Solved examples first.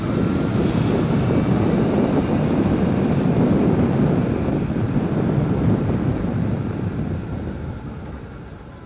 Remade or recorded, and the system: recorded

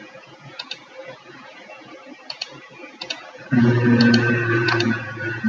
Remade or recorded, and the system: remade, vocoder, Vocos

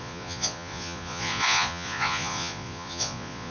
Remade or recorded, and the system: remade, vocoder, Vocos